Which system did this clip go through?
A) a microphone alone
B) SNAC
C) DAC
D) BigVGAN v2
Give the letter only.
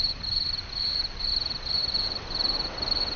A